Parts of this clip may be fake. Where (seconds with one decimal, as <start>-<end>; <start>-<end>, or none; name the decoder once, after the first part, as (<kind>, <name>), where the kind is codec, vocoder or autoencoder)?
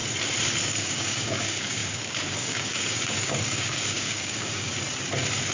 0.6-4.7 (codec, DAC)